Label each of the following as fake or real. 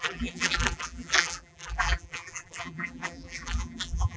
fake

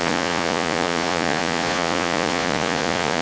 fake